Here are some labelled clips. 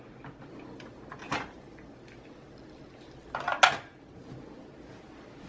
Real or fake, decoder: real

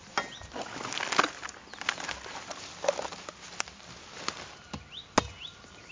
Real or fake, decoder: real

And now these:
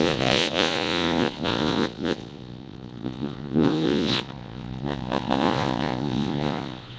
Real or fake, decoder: fake, vocoder, Vocos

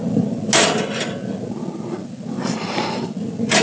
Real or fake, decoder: real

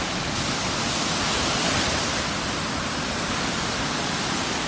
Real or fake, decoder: real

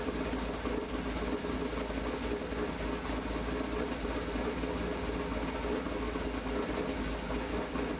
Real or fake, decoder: real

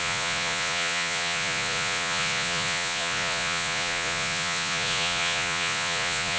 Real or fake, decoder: fake, vocoder, Vocos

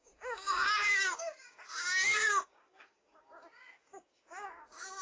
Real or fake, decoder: fake, codec, DAC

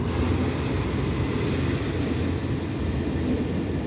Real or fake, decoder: real